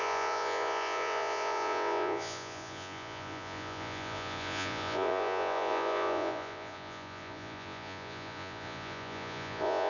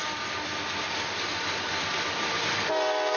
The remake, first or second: first